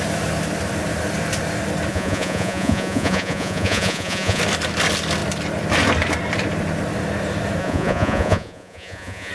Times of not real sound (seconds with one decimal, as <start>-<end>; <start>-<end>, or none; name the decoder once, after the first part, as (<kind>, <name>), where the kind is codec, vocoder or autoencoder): 1.9-4.4 (vocoder, Vocos); 7.6-9.3